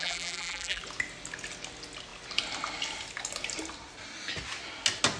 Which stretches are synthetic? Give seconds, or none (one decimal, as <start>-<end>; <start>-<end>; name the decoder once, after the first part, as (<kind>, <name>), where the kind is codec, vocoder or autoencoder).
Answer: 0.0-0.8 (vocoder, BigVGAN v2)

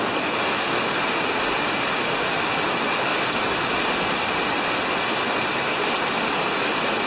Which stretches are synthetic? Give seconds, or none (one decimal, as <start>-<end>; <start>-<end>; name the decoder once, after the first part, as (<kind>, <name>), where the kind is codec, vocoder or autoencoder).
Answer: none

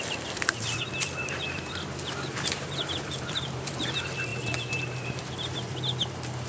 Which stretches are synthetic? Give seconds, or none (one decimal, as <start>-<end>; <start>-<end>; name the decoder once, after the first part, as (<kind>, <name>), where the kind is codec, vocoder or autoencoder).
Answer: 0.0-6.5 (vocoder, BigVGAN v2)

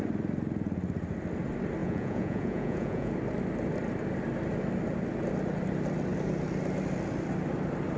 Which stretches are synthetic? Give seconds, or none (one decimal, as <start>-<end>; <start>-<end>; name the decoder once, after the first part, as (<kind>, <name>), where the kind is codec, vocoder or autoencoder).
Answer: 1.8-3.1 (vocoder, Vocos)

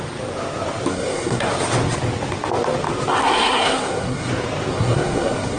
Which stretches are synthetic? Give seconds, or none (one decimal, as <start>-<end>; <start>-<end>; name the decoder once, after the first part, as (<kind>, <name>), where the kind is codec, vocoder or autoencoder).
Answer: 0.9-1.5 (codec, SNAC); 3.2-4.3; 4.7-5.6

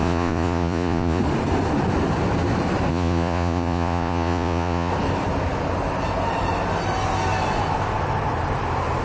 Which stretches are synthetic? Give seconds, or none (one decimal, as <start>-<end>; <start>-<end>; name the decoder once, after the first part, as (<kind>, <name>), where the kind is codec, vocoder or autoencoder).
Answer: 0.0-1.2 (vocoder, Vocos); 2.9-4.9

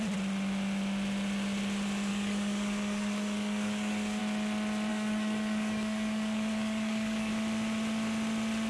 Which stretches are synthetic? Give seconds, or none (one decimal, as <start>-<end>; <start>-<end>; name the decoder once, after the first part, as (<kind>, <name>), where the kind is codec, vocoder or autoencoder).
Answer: 2.1-4.2 (codec, DAC); 4.9-7.3